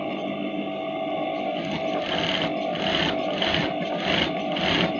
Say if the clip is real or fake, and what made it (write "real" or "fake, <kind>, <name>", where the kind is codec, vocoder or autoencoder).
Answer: real